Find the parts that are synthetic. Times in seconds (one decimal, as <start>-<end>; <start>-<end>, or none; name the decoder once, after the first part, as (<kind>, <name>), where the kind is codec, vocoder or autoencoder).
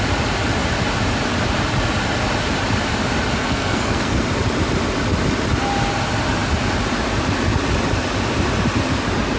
3.4-4.2 (codec, SNAC)